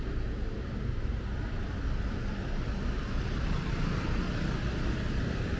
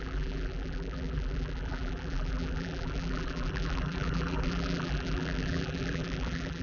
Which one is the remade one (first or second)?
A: second